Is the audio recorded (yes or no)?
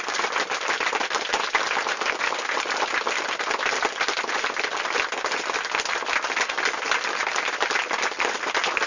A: yes